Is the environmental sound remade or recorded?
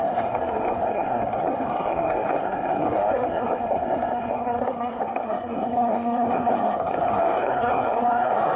remade